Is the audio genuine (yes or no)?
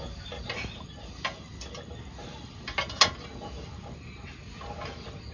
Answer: yes